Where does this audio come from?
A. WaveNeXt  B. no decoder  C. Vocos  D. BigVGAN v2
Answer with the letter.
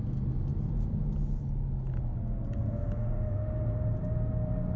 B